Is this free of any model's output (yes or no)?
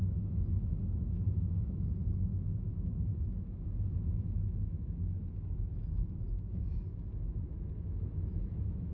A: no